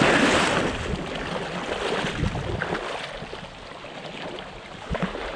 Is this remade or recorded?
recorded